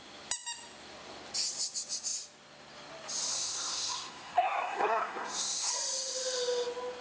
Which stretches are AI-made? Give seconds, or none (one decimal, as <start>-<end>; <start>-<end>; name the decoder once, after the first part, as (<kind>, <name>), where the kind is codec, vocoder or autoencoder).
3.3-5.7 (codec, SNAC)